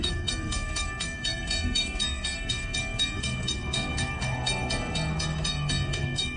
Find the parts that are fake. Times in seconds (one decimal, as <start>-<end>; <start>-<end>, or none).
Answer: 0.0-6.4